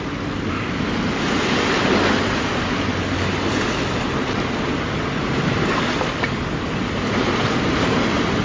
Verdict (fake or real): real